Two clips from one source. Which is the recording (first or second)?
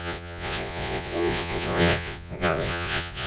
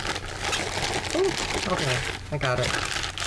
second